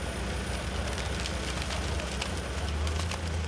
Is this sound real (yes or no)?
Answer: yes